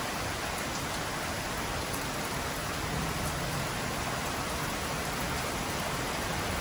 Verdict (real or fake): real